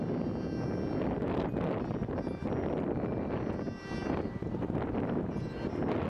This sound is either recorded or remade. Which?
recorded